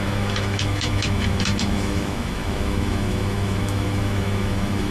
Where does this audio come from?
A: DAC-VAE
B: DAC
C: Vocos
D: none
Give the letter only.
A